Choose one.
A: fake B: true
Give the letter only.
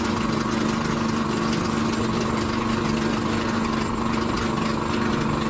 B